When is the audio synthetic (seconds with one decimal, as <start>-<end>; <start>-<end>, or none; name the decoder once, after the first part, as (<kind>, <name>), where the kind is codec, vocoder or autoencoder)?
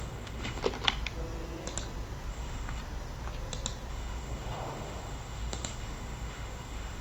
0.0-0.6 (autoencoder, DAC-VAE); 2.3-2.8; 3.9-7.0